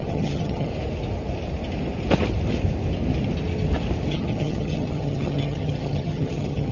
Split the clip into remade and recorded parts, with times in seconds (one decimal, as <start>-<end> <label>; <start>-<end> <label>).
0.0-0.7 remade; 0.7-4.1 recorded; 4.1-6.7 remade